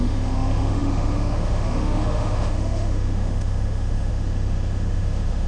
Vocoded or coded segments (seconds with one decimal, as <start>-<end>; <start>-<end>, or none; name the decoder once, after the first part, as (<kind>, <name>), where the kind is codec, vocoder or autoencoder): 0.0-5.5 (autoencoder, DAC-VAE)